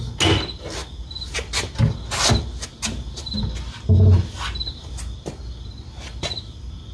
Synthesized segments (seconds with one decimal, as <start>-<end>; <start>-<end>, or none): none